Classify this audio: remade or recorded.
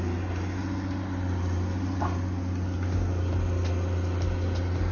recorded